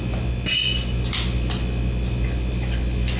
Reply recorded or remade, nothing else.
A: recorded